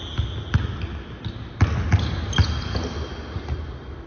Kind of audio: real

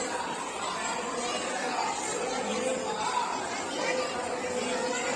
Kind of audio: real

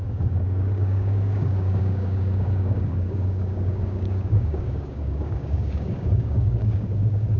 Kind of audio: fake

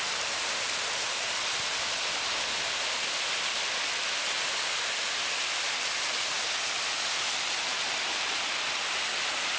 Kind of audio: real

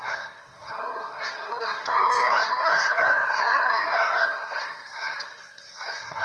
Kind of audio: fake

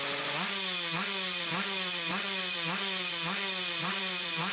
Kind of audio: fake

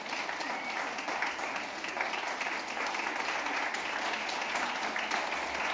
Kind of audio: real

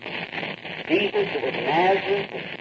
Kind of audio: real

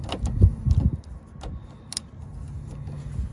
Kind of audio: real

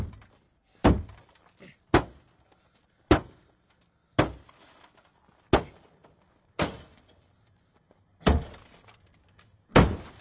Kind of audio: real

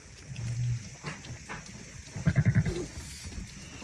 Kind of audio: real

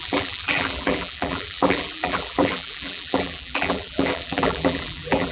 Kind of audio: fake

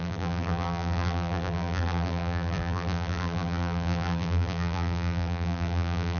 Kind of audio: fake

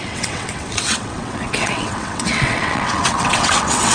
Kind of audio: fake